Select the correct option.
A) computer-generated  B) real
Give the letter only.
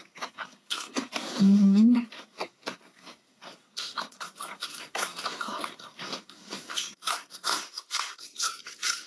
A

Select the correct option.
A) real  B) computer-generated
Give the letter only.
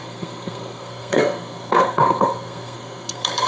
B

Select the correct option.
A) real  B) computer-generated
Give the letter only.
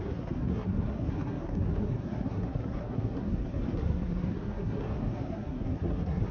B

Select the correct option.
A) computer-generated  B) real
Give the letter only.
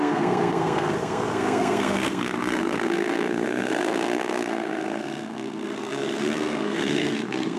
A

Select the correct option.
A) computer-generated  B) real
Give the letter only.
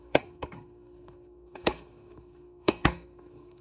A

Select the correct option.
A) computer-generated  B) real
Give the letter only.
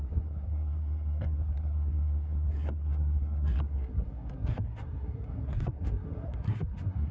A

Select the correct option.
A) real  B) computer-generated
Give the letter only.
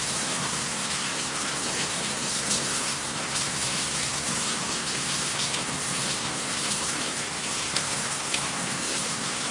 B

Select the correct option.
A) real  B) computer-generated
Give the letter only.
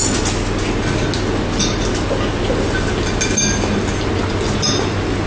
A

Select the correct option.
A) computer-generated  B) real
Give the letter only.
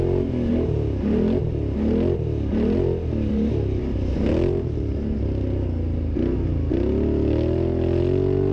B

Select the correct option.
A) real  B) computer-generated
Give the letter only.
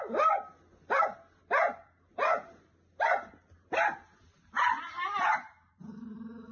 A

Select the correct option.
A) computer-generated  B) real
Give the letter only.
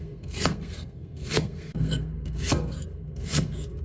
A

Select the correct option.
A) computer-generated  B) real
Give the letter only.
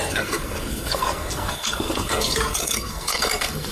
A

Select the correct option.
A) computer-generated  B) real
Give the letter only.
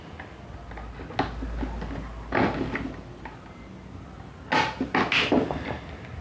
B